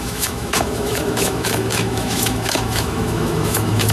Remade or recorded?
remade